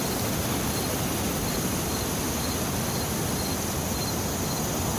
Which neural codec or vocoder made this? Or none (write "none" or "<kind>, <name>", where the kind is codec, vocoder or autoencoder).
none